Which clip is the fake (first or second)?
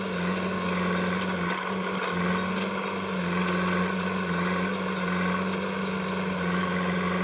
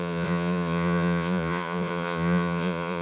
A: second